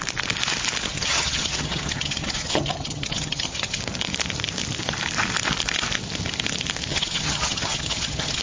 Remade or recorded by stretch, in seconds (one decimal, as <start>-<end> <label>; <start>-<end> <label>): 0.0-0.9 recorded; 0.9-3.8 remade; 3.8-6.9 recorded; 6.9-8.4 remade